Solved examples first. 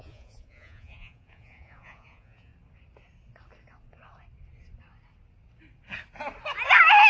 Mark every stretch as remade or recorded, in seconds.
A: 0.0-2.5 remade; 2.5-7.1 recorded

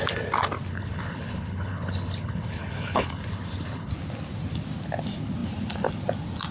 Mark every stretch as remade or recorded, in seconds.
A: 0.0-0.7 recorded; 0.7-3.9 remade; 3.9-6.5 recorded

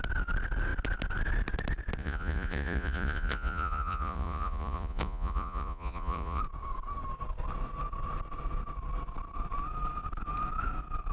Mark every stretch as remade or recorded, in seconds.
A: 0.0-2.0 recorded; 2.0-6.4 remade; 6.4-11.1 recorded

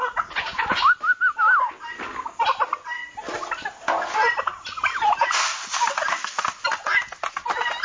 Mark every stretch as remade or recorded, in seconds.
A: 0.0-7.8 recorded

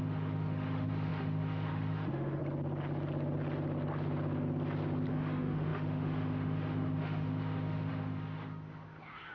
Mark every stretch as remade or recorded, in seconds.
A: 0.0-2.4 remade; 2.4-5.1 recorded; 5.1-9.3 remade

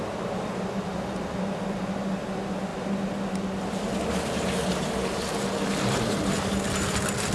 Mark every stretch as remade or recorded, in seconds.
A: 0.0-7.3 recorded